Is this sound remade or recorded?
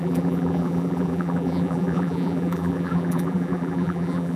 remade